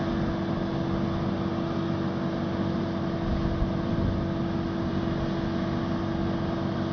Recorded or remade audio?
recorded